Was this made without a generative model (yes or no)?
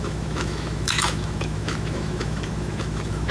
no